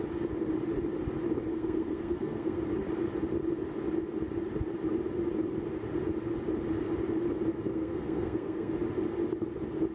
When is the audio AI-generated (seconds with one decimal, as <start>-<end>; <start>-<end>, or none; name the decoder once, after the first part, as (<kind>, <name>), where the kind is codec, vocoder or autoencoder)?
1.5-2.6 (codec, SNAC); 7.7-8.7